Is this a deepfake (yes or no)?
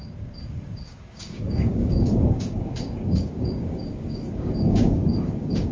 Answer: yes